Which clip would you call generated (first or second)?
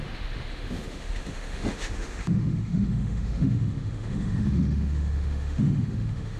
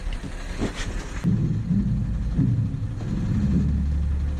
first